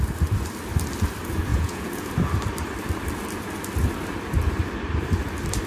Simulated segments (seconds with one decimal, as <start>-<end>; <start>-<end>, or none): 1.5-2.1